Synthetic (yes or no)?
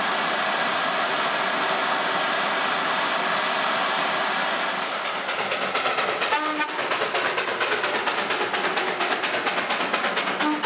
no